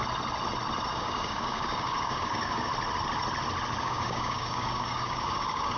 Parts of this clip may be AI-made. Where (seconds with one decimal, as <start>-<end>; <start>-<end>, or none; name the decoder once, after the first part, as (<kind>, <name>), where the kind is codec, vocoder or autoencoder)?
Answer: 0.9-2.7 (codec, DAC); 3.8-5.8